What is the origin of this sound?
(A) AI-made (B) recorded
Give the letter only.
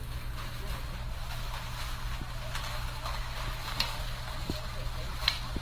B